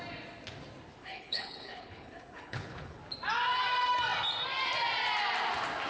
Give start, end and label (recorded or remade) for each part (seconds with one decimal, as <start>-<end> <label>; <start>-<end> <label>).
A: 0.0-1.0 recorded; 1.0-3.0 remade; 3.0-5.9 recorded